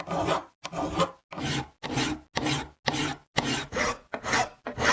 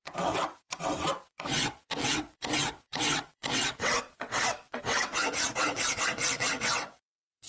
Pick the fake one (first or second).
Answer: second